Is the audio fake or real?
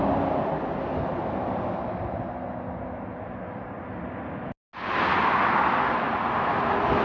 real